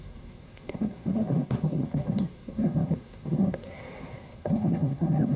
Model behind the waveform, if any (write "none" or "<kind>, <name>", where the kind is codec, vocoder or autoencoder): codec, SNAC